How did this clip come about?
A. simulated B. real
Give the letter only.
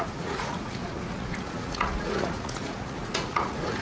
A